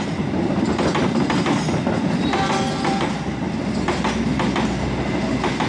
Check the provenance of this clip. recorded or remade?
recorded